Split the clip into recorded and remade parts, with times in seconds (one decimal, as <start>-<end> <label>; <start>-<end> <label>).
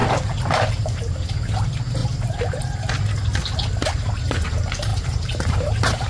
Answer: 0.0-2.0 recorded; 2.0-3.0 remade; 3.0-3.8 recorded; 3.8-4.5 remade; 4.5-4.9 recorded; 4.9-6.1 remade